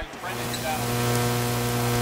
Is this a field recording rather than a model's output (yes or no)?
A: yes